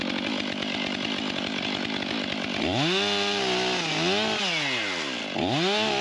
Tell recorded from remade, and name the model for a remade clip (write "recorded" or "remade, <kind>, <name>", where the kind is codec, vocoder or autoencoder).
recorded